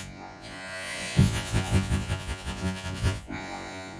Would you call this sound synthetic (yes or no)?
yes